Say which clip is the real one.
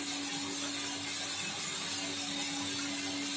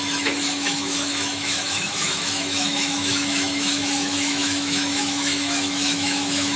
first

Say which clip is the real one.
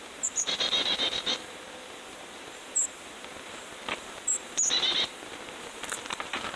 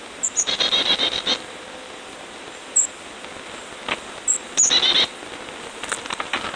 second